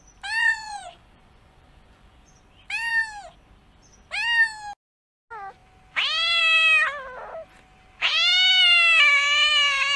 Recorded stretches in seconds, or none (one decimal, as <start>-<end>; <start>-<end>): 0.0-0.4; 2.4-10.0